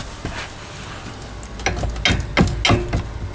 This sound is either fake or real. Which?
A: real